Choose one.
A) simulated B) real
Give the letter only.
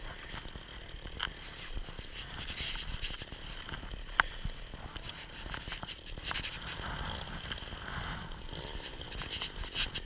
B